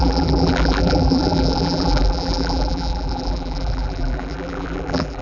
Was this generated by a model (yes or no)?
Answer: yes